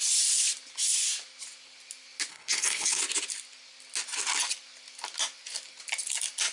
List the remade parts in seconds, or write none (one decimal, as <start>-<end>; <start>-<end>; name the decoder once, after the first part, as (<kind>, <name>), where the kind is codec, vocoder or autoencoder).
2.3-3.0 (codec, HILCodec)